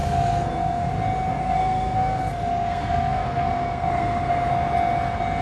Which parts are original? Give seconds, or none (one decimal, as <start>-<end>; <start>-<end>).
0.9-1.3; 4.5-5.4